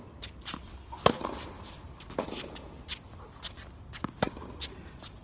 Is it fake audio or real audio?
real